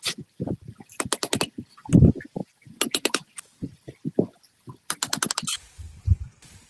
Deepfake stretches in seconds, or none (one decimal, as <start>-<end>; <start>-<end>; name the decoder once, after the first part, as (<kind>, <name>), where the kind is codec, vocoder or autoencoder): none